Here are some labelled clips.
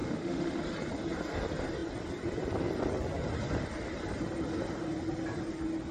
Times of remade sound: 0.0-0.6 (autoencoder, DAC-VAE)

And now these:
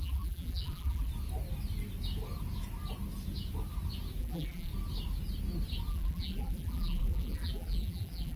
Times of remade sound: 0.0-1.1 (vocoder, BigVGAN v2); 4.2-4.7; 5.9-8.4

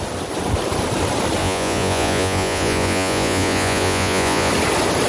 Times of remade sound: 1.4-4.5 (vocoder, Vocos)

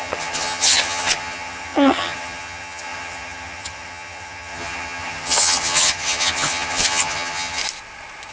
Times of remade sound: 0.0-7.6 (vocoder, HiFi-GAN)